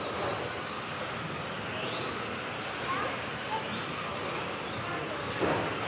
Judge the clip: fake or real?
real